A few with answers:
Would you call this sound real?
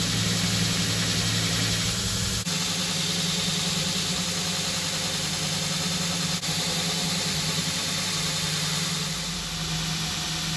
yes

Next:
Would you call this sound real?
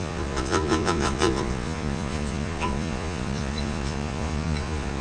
no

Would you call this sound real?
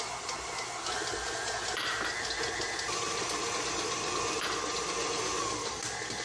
yes